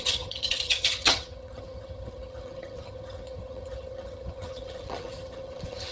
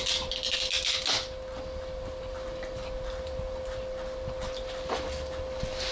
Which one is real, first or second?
second